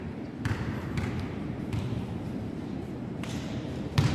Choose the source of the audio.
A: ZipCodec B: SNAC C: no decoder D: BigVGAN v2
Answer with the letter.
D